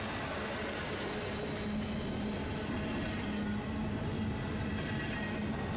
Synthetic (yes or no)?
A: no